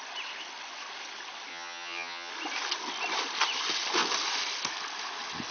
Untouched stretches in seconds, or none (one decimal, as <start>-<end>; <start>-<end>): 0.0-1.5; 2.3-5.5